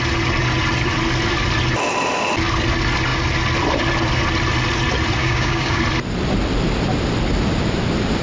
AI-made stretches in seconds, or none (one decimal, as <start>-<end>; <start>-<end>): 5.2-5.8